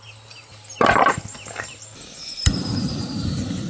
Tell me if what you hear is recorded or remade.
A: recorded